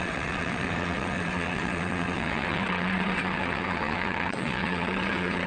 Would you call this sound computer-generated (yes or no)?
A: yes